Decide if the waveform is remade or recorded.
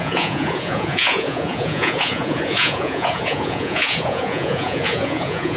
remade